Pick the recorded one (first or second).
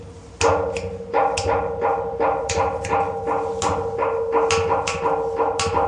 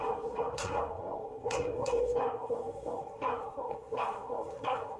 first